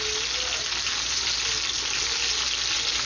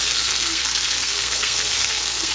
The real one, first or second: first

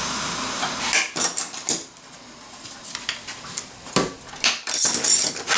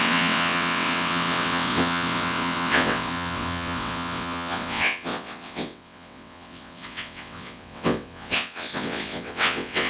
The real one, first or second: first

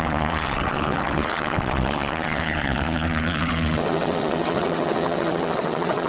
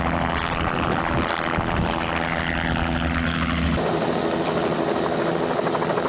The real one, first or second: second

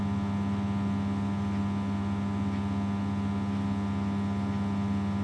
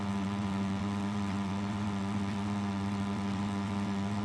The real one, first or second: first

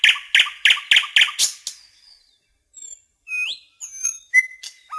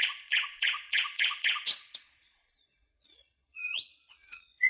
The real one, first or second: first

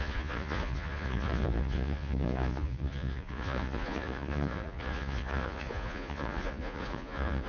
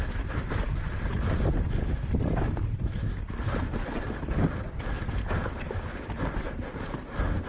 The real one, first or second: second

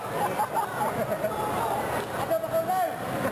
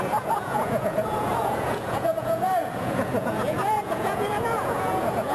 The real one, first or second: first